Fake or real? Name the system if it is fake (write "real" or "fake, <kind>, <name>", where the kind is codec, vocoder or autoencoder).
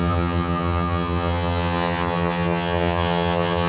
fake, vocoder, HiFi-GAN